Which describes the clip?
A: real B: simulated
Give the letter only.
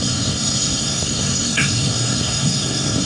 B